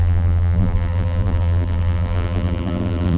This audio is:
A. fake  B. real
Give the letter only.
A